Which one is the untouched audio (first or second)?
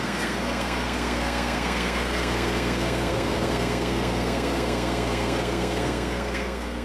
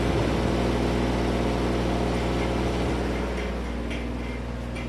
second